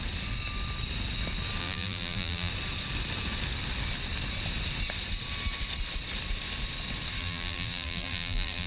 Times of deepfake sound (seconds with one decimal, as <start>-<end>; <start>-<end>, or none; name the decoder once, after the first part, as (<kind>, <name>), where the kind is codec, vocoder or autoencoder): 1.6-2.5 (vocoder, BigVGAN v2); 7.2-8.7